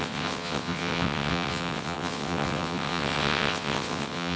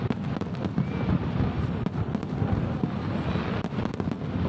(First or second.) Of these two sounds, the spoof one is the first